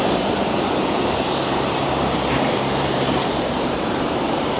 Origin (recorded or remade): remade